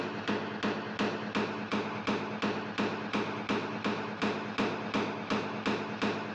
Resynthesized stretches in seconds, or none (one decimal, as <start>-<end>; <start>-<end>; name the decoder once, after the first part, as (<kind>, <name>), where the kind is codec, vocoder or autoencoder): none